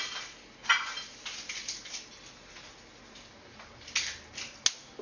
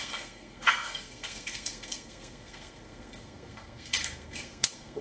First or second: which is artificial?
second